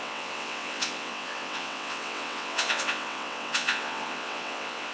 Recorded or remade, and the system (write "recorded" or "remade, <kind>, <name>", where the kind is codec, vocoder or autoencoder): remade, vocoder, WaveNeXt